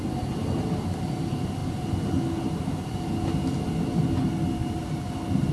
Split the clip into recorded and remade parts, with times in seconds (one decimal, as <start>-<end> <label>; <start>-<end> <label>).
0.0-5.5 recorded